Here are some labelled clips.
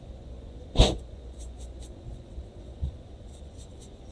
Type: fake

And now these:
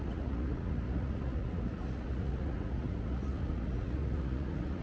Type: fake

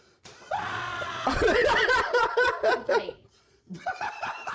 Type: fake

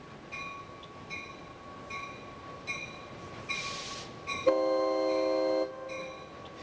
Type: real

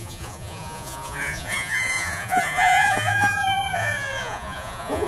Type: fake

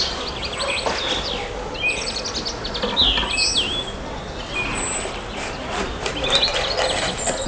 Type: real